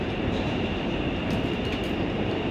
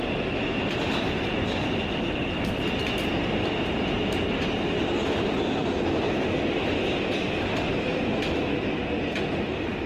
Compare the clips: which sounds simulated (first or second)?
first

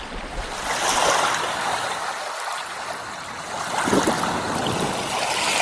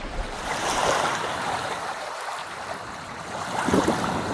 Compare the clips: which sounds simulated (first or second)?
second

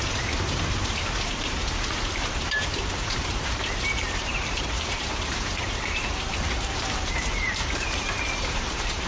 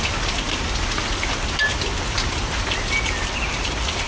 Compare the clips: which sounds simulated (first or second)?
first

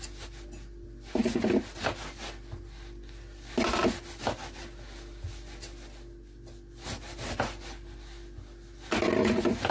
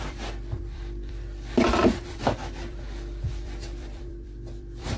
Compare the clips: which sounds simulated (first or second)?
second